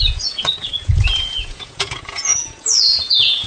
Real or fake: fake